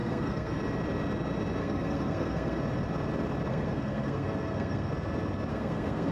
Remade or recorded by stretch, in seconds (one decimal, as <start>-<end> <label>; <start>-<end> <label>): 0.0-0.6 remade; 0.6-1.6 recorded; 1.6-2.6 remade; 2.6-3.5 recorded; 3.5-4.9 remade; 4.9-5.5 recorded; 5.5-6.1 remade

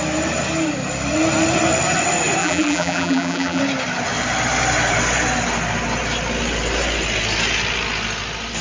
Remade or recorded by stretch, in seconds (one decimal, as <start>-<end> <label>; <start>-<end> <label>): 0.0-2.4 recorded; 2.4-3.6 remade; 3.6-8.6 recorded

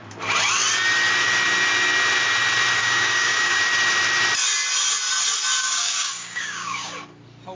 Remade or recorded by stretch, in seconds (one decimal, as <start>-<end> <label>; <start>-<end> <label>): 0.0-2.8 recorded; 2.8-3.6 remade; 3.6-5.6 recorded; 5.6-6.9 remade; 6.9-7.5 recorded

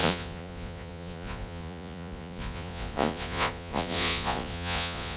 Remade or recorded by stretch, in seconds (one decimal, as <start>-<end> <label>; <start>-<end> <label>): 0.0-5.2 remade